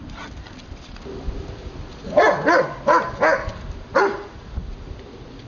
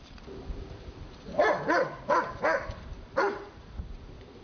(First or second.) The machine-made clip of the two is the second